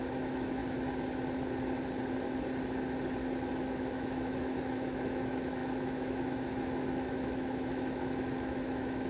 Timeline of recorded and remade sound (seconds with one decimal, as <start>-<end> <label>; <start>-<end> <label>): 0.0-0.6 remade; 0.6-3.5 recorded; 3.5-9.1 remade